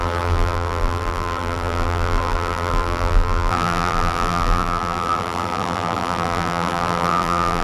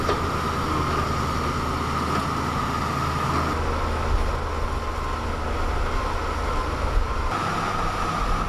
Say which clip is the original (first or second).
second